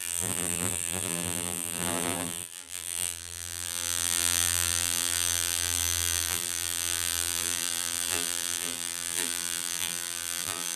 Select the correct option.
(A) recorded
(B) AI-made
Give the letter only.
B